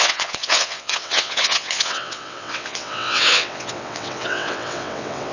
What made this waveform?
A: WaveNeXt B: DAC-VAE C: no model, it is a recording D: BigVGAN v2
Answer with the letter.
A